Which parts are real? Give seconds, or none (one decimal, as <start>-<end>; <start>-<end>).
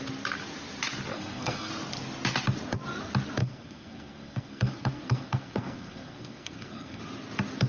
0.0-1.1; 1.7-3.4; 7.0-7.7